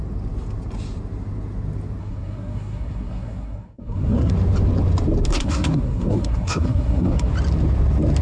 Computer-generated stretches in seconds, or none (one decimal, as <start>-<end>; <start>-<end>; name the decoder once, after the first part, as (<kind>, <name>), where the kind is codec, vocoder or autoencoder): 2.0-4.3 (codec, SNAC); 5.3-7.3